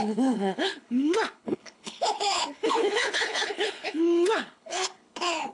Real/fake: fake